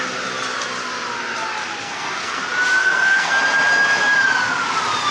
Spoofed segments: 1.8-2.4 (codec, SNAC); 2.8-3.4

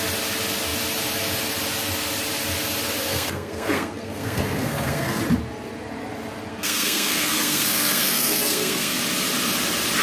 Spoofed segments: 3.1-5.2 (codec, SNAC); 6.5-9.0

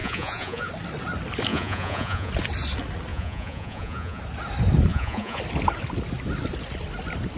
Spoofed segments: 0.0-0.7 (vocoder, Vocos); 1.5-2.3; 3.1-4.2; 4.9-5.4

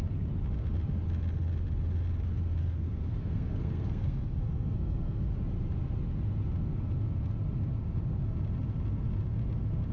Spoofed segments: 2.6-5.3 (codec, SNAC)

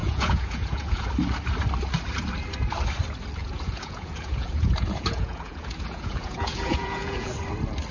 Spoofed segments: 0.0-1.1 (vocoder, Vocos); 3.4-7.3

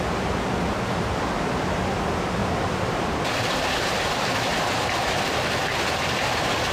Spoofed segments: 2.4-3.6 (vocoder, BigVGAN v2); 4.5-5.7